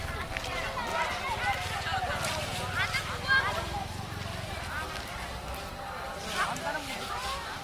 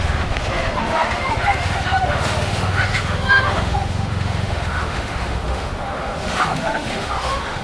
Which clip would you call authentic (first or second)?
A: first